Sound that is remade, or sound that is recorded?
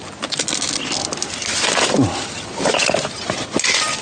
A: recorded